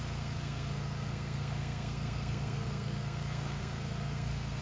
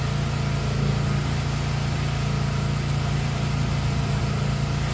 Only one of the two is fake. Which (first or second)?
first